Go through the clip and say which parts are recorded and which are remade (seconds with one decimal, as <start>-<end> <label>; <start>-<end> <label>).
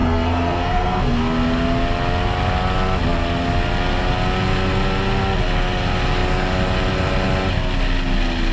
0.0-1.2 remade; 1.2-8.5 recorded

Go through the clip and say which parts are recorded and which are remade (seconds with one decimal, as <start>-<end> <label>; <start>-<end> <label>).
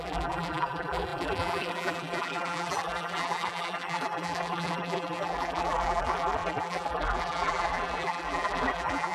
0.0-9.1 remade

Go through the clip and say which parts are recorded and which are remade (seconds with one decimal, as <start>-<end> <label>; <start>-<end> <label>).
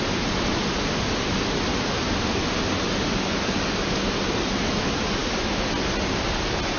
0.0-6.8 recorded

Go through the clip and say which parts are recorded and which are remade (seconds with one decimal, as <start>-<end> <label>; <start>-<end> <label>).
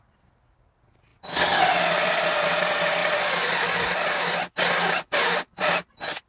0.0-6.3 recorded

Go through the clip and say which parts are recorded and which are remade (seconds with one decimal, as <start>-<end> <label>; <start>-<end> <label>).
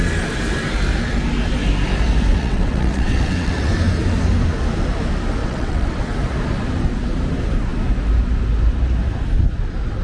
0.0-2.3 recorded; 2.3-3.7 remade; 3.7-5.4 recorded; 5.4-6.0 remade; 6.0-10.0 recorded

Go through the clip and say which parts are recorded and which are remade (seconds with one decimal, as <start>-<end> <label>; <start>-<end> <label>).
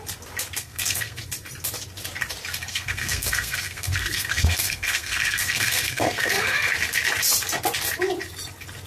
0.0-0.6 recorded; 0.6-1.2 remade; 1.2-2.7 recorded; 2.7-6.7 remade; 6.7-8.9 recorded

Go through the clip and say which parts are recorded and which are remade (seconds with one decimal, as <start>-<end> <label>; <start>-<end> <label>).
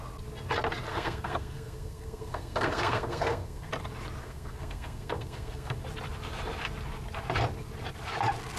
0.0-0.9 recorded; 0.9-3.7 remade; 3.7-4.2 recorded; 4.2-5.8 remade; 5.8-8.6 recorded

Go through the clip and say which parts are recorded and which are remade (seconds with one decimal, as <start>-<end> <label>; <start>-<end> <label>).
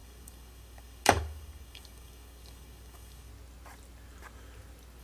0.0-3.3 remade; 3.3-5.0 recorded